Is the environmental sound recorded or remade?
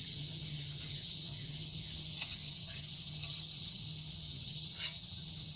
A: remade